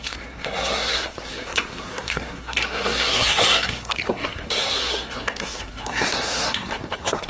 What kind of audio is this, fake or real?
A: fake